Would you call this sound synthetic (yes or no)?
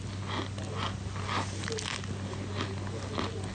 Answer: no